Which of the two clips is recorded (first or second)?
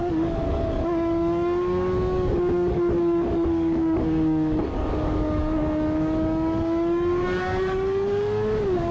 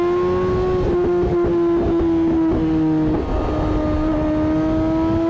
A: second